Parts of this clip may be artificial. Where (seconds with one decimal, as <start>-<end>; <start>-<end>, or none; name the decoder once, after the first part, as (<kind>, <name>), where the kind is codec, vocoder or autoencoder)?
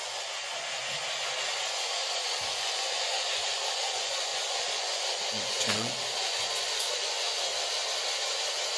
0.0-0.8 (vocoder, Vocos); 1.7-7.5